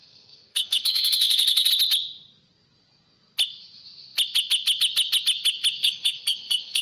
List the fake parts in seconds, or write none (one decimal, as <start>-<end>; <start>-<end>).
0.0-1.7; 5.8-6.8